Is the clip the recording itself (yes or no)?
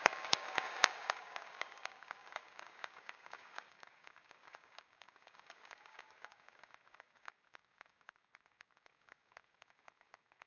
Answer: no